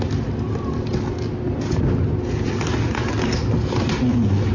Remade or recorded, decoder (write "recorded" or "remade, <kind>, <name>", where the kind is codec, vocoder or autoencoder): recorded